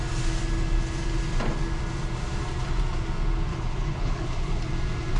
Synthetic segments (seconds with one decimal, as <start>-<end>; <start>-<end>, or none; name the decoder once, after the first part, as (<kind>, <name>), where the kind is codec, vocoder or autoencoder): 3.5-4.6 (codec, HILCodec)